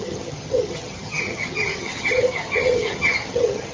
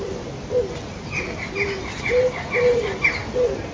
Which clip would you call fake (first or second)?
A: first